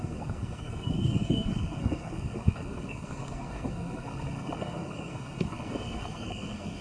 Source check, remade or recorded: remade